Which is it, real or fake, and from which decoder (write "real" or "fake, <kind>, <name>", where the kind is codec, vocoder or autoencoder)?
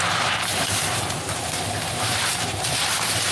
fake, vocoder, BigVGAN v2